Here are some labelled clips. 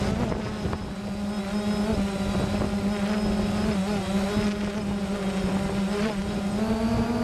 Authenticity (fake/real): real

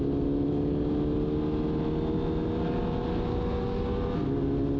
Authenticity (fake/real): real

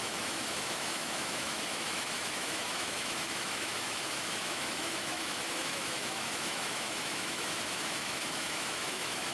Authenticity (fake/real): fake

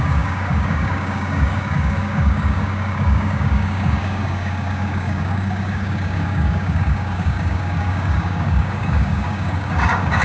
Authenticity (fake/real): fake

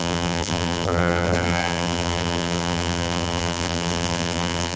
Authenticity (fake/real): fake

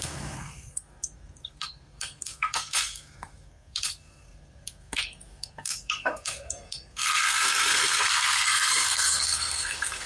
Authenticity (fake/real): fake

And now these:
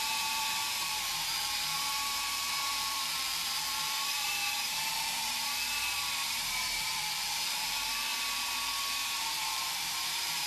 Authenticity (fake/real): fake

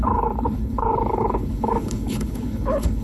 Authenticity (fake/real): fake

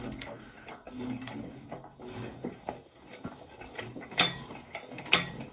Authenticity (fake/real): fake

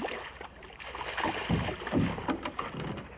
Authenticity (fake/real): real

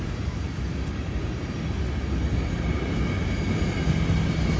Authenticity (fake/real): real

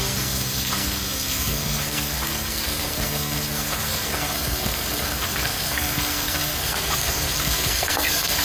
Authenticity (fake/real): fake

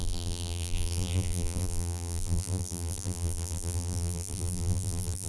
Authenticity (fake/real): fake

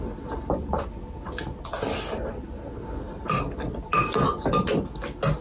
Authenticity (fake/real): real